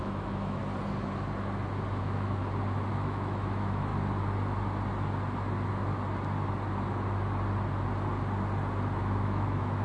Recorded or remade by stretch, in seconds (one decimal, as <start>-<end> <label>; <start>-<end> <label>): 0.0-0.6 remade; 0.6-2.0 recorded; 2.0-2.4 remade; 2.4-2.9 recorded; 2.9-3.9 remade; 3.9-9.0 recorded; 9.0-9.8 remade